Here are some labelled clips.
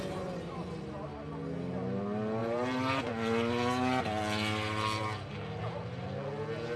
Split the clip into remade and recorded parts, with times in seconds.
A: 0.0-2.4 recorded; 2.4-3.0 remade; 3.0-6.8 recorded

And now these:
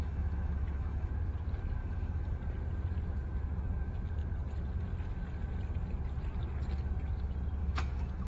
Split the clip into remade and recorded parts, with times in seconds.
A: 0.0-1.1 remade; 1.1-1.8 recorded; 1.8-2.4 remade; 2.4-7.6 recorded; 7.6-8.3 remade

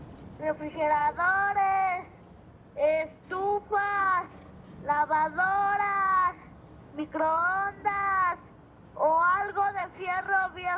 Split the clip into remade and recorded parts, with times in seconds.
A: 0.0-9.8 recorded; 9.8-10.8 remade

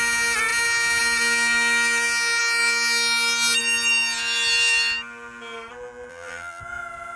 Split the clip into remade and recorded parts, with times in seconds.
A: 0.0-6.1 recorded; 6.1-6.6 remade; 6.6-7.2 recorded

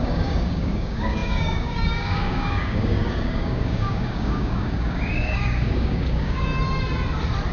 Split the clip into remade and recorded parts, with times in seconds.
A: 0.0-6.5 remade; 6.5-7.5 recorded

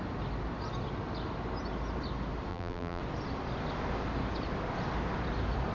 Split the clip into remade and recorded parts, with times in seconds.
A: 0.0-2.5 recorded; 2.5-3.0 remade; 3.0-5.7 recorded